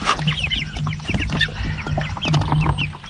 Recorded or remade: recorded